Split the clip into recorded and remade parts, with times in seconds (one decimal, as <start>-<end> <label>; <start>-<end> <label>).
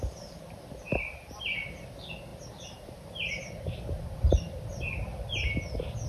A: 0.0-6.1 recorded